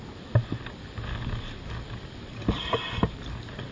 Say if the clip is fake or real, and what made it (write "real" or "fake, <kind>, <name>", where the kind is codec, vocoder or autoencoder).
real